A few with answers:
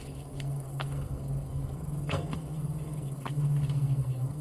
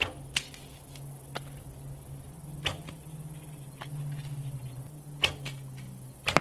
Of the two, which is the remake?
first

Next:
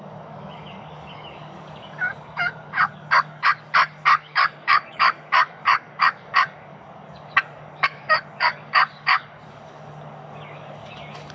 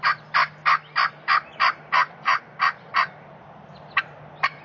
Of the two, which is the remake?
first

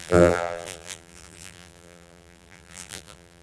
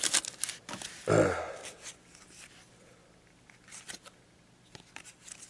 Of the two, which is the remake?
first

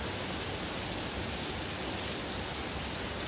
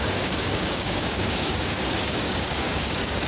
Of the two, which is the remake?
second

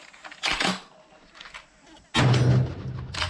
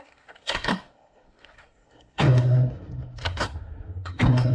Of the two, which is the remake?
second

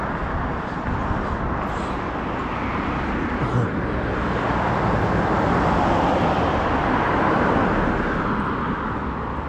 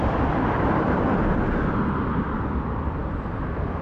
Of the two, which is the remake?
second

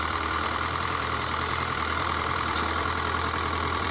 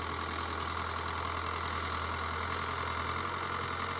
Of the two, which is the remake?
first